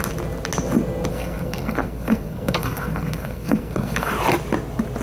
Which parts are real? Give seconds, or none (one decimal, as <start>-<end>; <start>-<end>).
0.0-1.1; 4.1-5.0